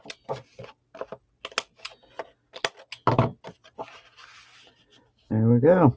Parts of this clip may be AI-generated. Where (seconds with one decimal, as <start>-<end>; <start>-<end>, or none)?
none

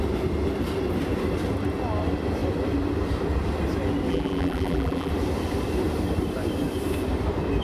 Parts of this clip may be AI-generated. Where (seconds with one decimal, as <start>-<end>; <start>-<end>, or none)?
4.1-5.1

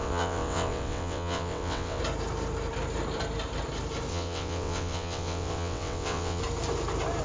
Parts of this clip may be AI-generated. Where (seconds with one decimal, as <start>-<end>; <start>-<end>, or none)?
0.0-2.0; 4.1-6.4

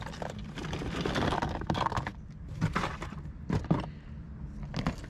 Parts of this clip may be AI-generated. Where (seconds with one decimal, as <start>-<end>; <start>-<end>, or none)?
none

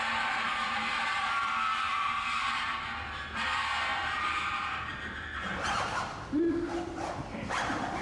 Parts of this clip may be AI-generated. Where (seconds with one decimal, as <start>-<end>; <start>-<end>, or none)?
0.0-8.0